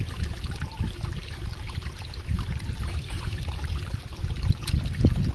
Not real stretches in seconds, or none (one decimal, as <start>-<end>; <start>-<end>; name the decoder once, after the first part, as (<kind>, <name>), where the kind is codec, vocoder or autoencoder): 0.0-4.2 (vocoder, BigVGAN v2)